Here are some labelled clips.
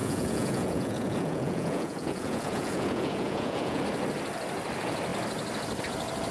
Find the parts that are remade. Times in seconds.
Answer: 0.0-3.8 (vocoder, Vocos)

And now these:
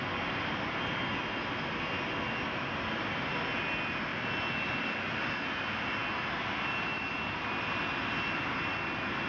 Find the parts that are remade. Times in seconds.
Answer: none

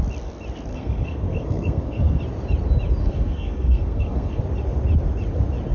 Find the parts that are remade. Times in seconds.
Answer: 0.7-2.2 (codec, SNAC); 3.0-4.4

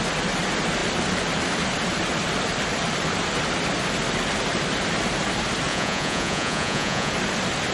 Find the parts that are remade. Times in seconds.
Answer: 5.7-7.1 (vocoder, Vocos)